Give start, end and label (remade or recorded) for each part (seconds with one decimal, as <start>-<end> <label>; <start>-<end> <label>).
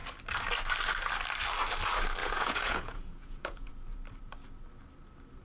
0.0-2.2 recorded; 2.2-3.7 remade; 3.7-5.4 recorded